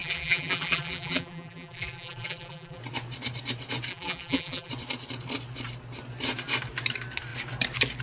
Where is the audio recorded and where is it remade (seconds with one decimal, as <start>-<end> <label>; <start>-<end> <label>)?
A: 0.0-2.8 remade; 2.8-3.9 recorded; 3.9-4.7 remade; 4.7-8.0 recorded